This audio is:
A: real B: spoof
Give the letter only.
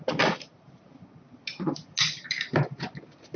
A